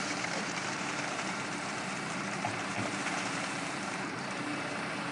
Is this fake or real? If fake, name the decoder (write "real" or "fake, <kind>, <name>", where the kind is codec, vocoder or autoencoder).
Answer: fake, vocoder, BigVGAN v2